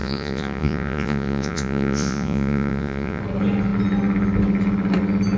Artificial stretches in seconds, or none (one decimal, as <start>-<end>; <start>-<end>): 0.0-3.2